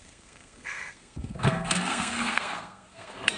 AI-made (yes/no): yes